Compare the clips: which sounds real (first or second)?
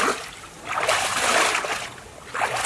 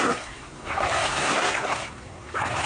first